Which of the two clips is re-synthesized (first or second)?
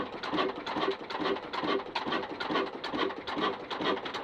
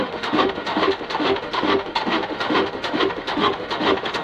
second